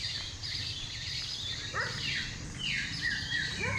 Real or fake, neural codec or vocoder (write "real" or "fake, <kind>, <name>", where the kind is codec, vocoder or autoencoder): fake, vocoder, BigVGAN v2